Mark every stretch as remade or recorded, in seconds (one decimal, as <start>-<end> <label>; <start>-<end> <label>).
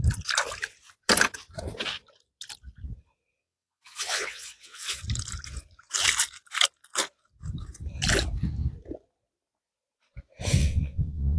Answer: 0.0-3.4 recorded; 3.4-5.0 remade; 5.0-10.6 recorded; 10.6-11.4 remade